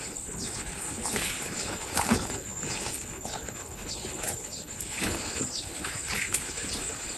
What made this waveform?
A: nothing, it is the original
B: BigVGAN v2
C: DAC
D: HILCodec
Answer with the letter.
D